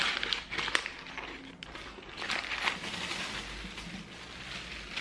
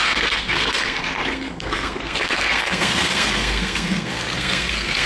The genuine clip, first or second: first